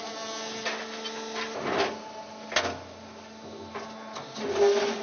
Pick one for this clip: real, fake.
real